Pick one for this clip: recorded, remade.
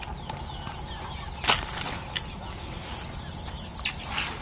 recorded